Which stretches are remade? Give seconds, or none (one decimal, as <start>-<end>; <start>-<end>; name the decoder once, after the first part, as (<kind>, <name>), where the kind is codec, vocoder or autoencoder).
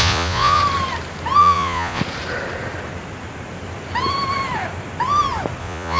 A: 0.0-0.6 (vocoder, Vocos); 1.4-2.0; 5.6-6.0